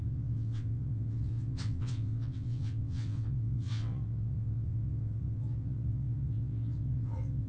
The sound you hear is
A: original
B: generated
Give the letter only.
B